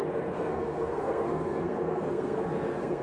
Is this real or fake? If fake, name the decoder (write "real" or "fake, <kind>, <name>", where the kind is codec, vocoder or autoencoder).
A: fake, codec, SNAC